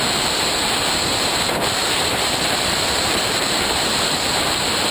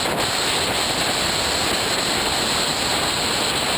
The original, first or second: second